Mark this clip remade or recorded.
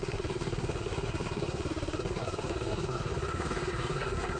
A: remade